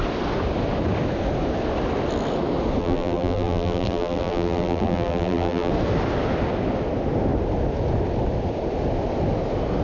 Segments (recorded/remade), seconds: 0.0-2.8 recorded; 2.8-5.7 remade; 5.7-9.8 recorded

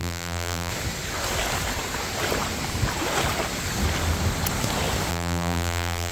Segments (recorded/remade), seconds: 0.0-0.7 remade; 0.7-5.1 recorded; 5.1-6.1 remade

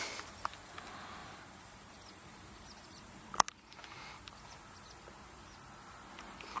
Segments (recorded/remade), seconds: 0.0-1.2 recorded; 1.2-3.2 remade; 3.2-6.6 recorded

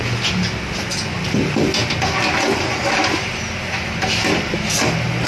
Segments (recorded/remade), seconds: 0.0-5.3 recorded

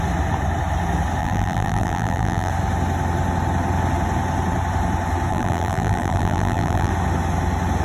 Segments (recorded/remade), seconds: 0.0-1.2 recorded; 1.2-2.5 remade; 2.5-5.3 recorded; 5.3-6.9 remade; 6.9-7.8 recorded